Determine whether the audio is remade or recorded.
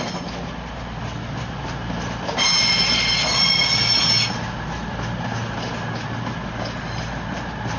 recorded